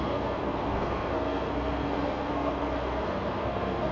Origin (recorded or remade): remade